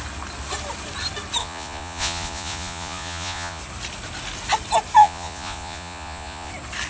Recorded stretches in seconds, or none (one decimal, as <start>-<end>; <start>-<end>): 0.0-1.4; 3.6-5.0; 6.5-6.9